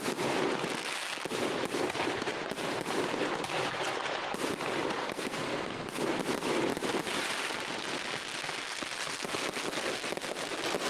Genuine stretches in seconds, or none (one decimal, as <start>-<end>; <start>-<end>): 0.0-5.0; 6.0-10.9